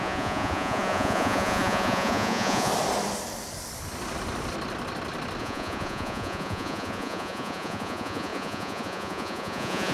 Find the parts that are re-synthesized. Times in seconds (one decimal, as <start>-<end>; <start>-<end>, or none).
0.0-2.7; 5.4-9.9